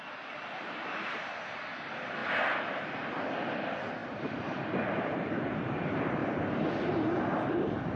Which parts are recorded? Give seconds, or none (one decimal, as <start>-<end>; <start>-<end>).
0.0-8.0